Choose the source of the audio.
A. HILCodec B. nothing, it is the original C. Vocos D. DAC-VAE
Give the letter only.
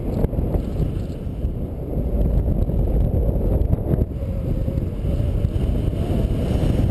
B